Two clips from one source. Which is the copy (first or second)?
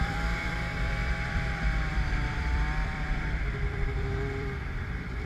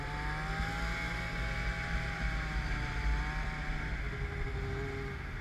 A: first